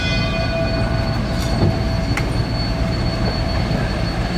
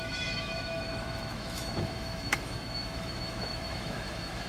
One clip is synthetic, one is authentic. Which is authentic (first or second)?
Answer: first